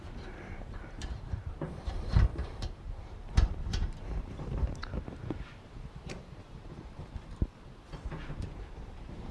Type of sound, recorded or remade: remade